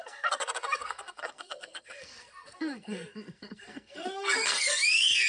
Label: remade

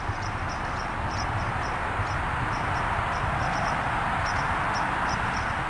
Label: recorded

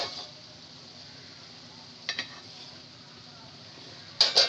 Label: recorded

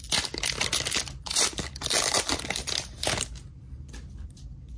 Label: recorded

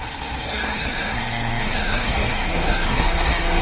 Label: remade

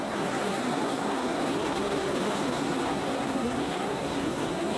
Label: remade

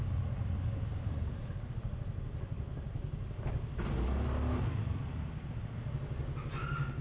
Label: recorded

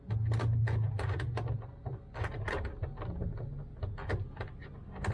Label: recorded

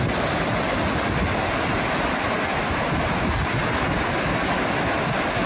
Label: recorded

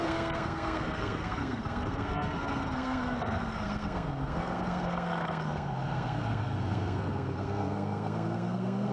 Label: remade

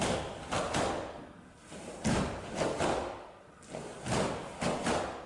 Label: recorded